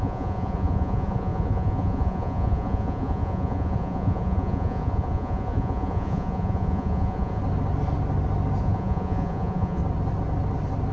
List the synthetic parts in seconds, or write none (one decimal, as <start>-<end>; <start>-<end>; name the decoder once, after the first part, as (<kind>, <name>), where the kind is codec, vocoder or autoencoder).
0.0-7.4 (vocoder, Vocos); 8.6-9.8